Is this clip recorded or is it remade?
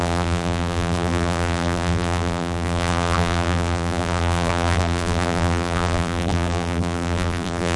remade